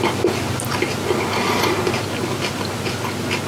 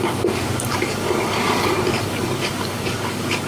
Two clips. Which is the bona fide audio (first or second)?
first